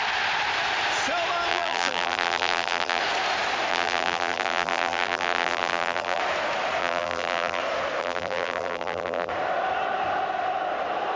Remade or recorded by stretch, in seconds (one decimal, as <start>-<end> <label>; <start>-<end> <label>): 0.0-1.5 recorded; 1.5-3.0 remade; 3.0-3.7 recorded; 3.7-6.2 remade; 6.2-6.8 recorded; 6.8-7.6 remade; 7.6-8.0 recorded; 8.0-9.3 remade; 9.3-11.2 recorded